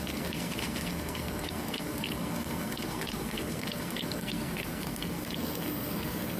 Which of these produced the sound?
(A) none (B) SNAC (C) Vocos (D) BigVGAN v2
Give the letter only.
B